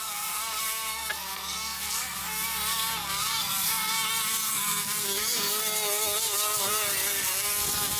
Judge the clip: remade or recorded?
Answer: remade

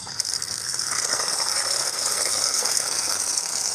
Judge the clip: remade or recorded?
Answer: remade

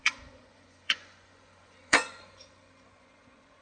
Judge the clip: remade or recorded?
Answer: remade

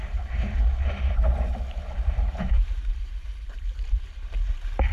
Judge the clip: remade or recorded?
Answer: recorded